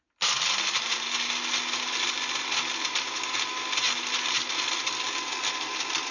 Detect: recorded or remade recorded